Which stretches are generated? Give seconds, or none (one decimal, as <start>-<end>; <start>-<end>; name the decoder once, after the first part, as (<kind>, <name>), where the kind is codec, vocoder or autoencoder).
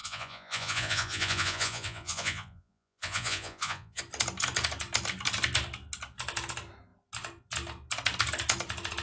0.0-4.0 (vocoder, Vocos)